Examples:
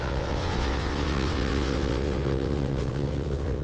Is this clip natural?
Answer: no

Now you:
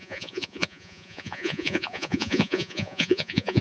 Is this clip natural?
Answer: no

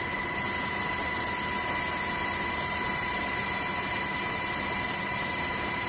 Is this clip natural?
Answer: yes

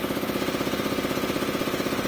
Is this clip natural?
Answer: no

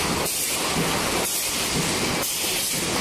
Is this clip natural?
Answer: yes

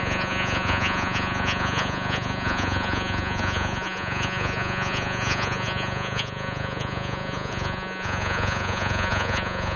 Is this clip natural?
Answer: no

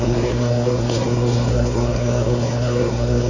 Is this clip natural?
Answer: no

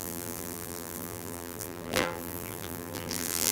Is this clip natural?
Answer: no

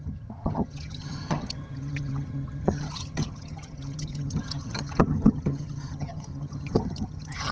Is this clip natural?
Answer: no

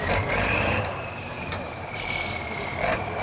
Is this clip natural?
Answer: no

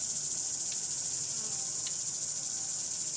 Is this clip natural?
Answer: yes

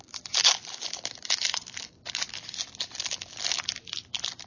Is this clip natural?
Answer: yes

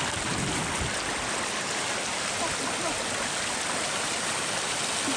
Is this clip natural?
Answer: yes